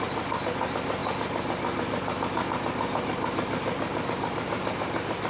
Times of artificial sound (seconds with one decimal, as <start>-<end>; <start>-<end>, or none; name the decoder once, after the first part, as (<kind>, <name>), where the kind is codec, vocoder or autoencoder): none